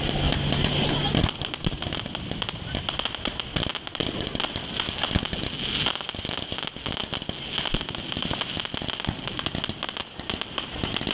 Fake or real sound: real